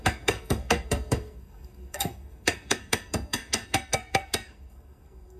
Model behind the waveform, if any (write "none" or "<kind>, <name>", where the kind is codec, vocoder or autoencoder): codec, SNAC